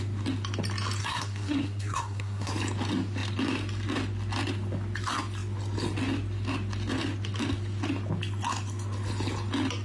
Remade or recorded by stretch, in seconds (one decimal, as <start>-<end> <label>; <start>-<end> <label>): 0.0-1.0 recorded; 1.0-2.5 remade; 2.5-9.8 recorded